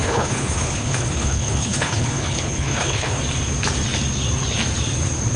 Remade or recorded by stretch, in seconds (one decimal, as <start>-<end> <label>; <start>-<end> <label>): 0.0-3.2 remade; 3.2-5.4 recorded